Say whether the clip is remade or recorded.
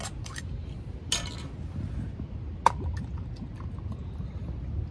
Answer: recorded